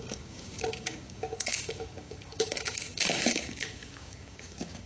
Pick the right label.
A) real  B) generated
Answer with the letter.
B